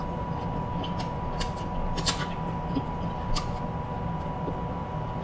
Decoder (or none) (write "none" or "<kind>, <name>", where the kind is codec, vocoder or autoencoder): none